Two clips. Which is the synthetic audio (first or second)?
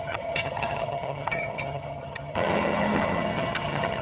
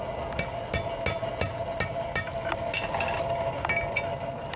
first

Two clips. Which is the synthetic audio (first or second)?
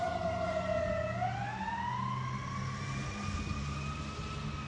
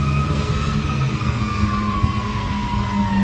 second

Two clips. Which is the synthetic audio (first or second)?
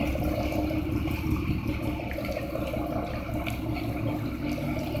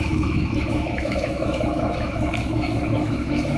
second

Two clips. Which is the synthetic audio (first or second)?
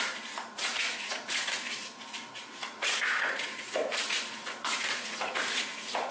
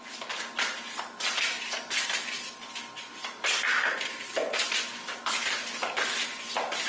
first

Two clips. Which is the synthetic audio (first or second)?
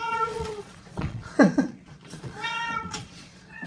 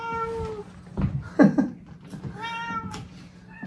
first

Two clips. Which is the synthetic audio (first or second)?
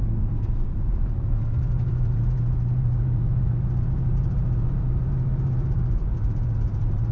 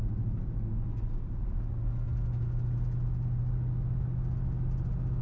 first